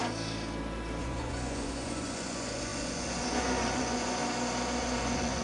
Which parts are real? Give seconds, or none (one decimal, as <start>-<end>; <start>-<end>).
0.0-1.0; 4.2-4.8